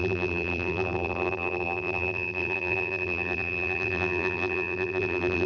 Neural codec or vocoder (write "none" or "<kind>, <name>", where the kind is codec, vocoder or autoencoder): vocoder, BigVGAN v2